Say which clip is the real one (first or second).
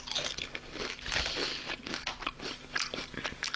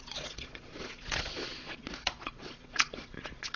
first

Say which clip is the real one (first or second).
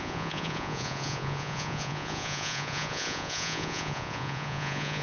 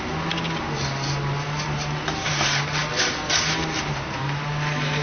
second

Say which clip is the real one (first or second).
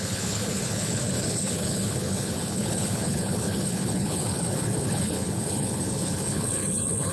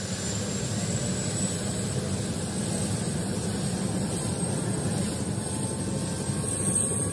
second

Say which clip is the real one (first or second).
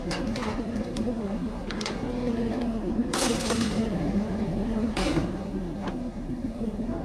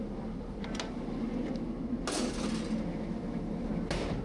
second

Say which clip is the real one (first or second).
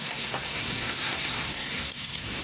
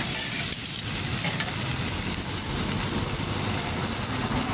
second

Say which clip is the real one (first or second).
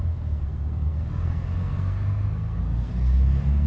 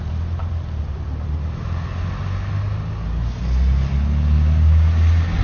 second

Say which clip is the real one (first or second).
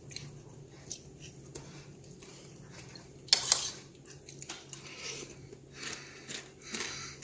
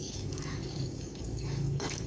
first